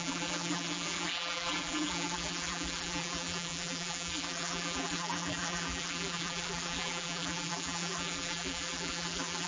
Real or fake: fake